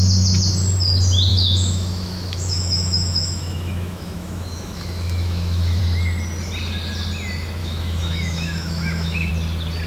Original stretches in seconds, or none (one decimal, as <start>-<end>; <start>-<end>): 0.0-1.3; 5.8-7.6; 9.3-9.9